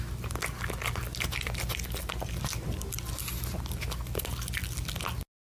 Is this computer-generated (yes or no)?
no